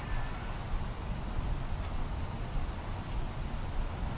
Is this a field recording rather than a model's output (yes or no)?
no